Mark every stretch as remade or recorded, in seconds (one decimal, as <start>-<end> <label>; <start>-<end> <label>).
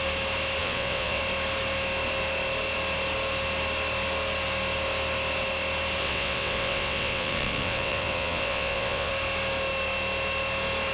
0.0-0.6 recorded; 0.6-1.2 remade; 1.2-6.0 recorded; 6.0-9.1 remade; 9.1-10.9 recorded